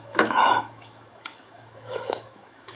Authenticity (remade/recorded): remade